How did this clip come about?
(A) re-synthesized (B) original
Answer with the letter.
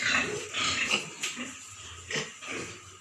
A